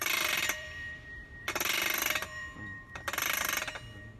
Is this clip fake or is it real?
fake